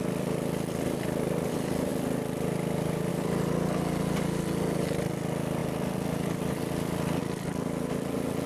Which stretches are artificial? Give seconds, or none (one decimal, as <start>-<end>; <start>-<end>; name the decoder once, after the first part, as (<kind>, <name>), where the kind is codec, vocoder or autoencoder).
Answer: none